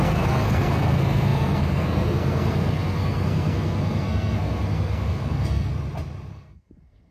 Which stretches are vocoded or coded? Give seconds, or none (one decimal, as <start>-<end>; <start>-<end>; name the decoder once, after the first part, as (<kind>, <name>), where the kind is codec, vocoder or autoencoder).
0.0-5.7 (codec, SNAC); 6.3-7.1